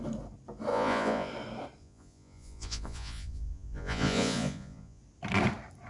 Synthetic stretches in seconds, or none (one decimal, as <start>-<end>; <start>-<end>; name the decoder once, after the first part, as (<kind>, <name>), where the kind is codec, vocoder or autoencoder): 0.7-1.3 (vocoder, Vocos); 1.8-5.0

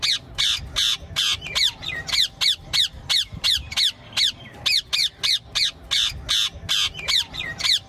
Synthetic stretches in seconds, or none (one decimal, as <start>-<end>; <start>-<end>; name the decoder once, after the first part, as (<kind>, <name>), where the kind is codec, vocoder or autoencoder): 0.0-5.0 (vocoder, BigVGAN v2); 7.3-7.9

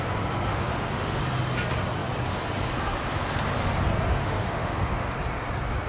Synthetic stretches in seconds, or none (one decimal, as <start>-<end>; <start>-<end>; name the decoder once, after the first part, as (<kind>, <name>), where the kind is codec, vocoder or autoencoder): 0.5-1.2 (autoencoder, DAC-VAE); 4.2-5.1

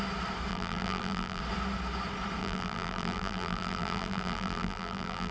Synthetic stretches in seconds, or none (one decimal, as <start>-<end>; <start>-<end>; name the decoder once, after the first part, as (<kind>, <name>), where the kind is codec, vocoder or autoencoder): 0.5-1.4 (vocoder, BigVGAN v2); 2.4-5.3

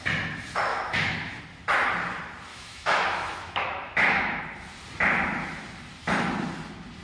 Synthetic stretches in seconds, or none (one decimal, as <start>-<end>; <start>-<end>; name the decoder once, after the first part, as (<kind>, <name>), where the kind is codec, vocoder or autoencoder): 0.7-1.4 (autoencoder, DAC-VAE); 2.5-4.4

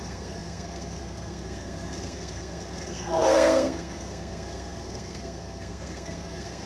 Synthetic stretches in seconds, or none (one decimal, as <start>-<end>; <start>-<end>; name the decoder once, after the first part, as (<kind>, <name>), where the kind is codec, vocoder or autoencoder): 0.0-6.7 (codec, SNAC)